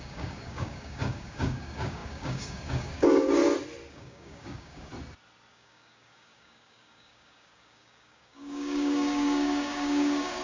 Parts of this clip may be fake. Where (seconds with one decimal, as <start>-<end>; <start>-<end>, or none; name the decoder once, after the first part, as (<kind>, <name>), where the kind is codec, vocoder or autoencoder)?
0.0-3.4 (codec, DAC); 3.9-4.9; 5.5-10.4